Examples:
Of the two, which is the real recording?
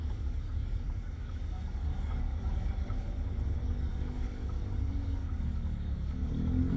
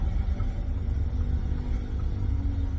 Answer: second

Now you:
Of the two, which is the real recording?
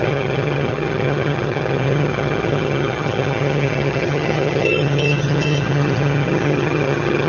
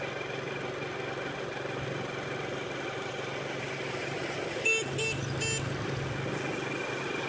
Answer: second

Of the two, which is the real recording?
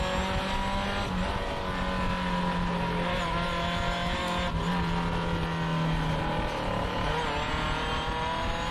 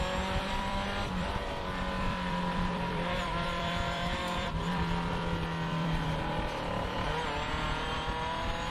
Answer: first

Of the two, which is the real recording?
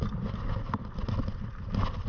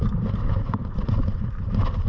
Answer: first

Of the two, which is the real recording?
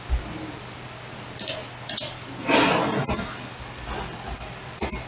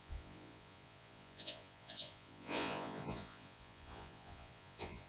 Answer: first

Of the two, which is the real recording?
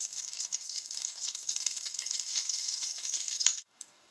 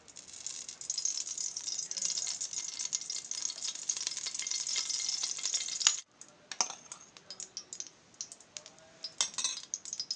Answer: second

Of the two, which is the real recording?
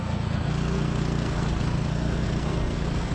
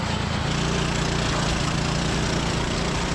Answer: second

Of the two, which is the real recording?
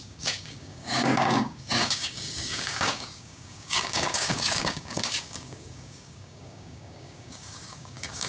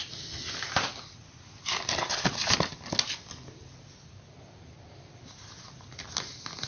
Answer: second